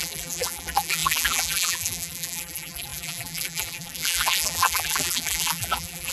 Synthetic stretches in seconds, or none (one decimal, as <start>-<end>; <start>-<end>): 0.0-6.1